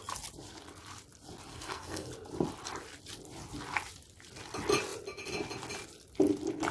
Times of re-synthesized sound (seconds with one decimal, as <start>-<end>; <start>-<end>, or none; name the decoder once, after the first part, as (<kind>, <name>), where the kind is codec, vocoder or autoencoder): 1.5-2.1 (codec, SNAC)